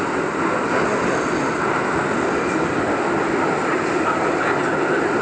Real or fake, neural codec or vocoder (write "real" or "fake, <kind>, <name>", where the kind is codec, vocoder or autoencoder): real